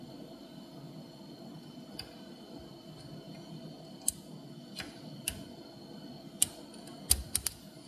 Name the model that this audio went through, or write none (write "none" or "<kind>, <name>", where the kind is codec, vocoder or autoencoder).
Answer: none